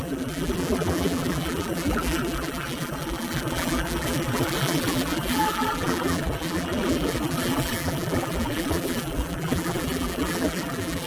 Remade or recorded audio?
remade